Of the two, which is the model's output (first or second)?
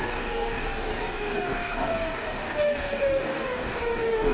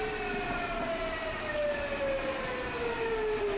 first